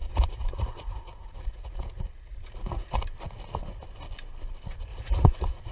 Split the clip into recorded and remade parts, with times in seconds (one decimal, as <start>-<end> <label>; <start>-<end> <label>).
0.0-3.0 remade; 3.0-4.9 recorded; 4.9-5.7 remade